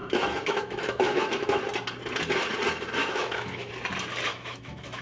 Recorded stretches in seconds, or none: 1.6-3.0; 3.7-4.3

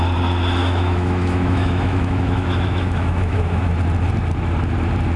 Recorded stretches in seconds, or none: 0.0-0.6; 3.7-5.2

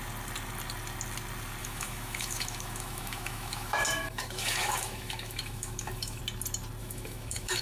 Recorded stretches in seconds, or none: 0.0-1.6; 6.2-6.8

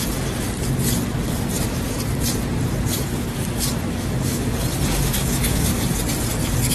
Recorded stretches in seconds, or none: 0.0-4.0; 4.5-5.0; 5.7-6.7

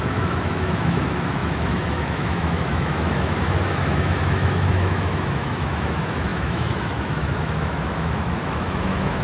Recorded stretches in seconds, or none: none

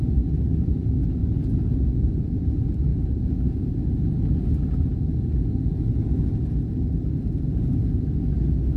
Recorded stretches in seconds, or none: 0.0-8.8

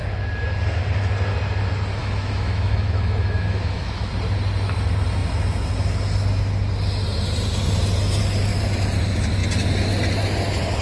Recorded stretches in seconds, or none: 0.0-2.0; 4.1-10.8

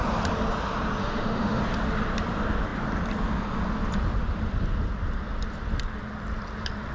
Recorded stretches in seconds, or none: 0.0-1.0; 1.6-6.9